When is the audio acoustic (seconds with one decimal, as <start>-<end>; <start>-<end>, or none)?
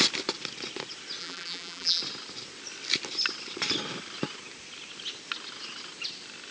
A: 0.0-1.2; 2.0-6.5